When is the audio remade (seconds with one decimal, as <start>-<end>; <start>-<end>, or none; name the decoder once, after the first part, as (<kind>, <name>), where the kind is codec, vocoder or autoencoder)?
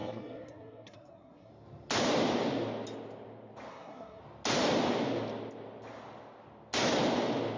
0.0-1.5 (codec, SNAC); 3.7-4.2